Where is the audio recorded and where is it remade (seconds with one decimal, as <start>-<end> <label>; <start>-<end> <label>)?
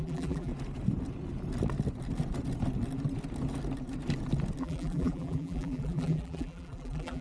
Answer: 0.0-0.5 remade; 0.5-4.6 recorded; 4.6-7.2 remade